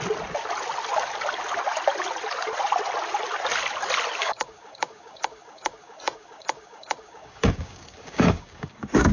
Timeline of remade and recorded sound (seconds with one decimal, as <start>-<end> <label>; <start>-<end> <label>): 0.0-4.2 recorded; 4.2-9.1 remade